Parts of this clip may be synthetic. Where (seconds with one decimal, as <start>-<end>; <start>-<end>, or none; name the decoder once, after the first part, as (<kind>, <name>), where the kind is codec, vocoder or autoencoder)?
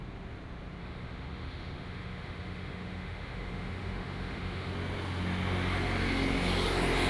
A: 0.8-4.7 (autoencoder, DAC-VAE)